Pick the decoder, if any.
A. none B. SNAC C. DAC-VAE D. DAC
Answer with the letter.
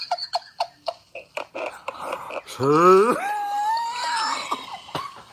A